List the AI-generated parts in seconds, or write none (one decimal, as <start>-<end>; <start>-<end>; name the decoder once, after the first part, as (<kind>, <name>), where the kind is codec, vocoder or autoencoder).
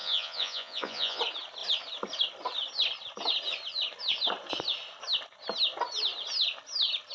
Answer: 0.0-1.2 (vocoder, Vocos)